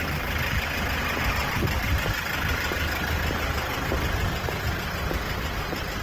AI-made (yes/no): no